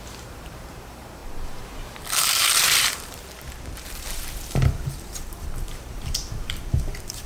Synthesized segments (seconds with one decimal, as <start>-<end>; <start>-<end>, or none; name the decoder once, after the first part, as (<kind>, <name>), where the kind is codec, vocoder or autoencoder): 0.0-7.3 (vocoder, BigVGAN v2)